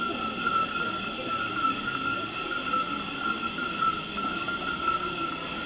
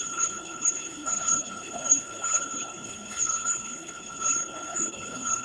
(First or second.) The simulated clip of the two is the second